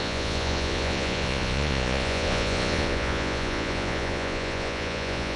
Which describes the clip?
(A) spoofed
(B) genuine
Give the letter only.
A